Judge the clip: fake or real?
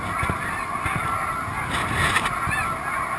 real